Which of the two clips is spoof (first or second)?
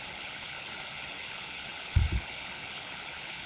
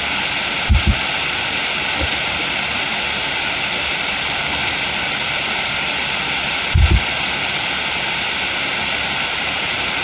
first